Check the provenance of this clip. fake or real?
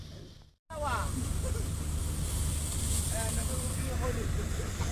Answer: real